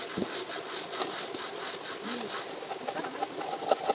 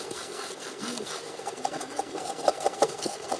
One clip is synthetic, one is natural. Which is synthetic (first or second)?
second